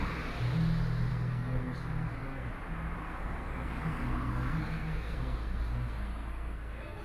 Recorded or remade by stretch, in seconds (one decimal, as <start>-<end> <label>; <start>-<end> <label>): 0.0-1.1 recorded; 1.1-2.5 remade; 2.5-3.0 recorded; 3.0-7.0 remade